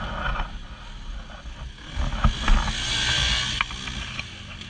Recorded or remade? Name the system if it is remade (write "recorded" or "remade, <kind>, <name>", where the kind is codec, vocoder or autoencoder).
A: recorded